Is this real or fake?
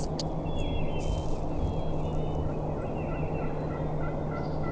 real